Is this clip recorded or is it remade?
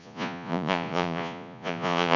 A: remade